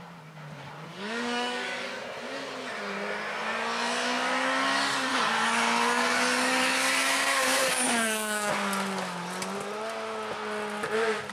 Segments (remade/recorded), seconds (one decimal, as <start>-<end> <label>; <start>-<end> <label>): 0.0-0.9 recorded; 0.9-1.9 remade; 1.9-5.1 recorded; 5.1-8.5 remade; 8.5-11.3 recorded